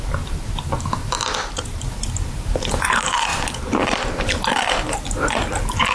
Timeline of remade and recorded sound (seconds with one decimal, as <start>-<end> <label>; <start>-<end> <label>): 0.0-5.9 recorded